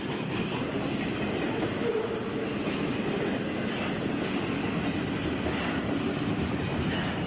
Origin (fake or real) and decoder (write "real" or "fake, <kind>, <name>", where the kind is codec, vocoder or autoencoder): real